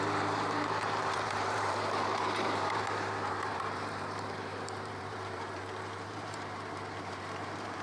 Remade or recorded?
remade